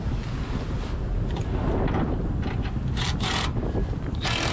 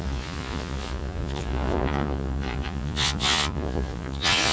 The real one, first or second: first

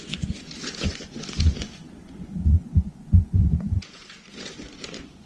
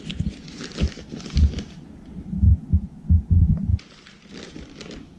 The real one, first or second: second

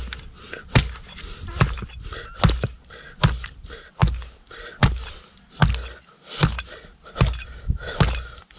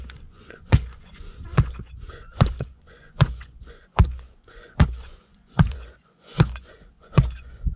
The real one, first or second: first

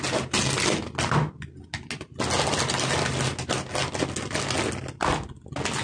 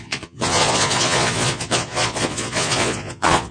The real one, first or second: first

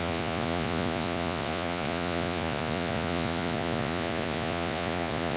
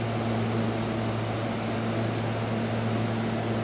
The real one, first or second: second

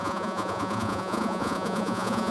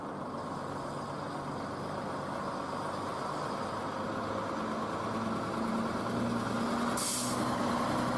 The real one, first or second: second